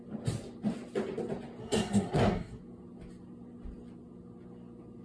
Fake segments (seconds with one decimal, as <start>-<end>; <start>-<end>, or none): 1.6-2.6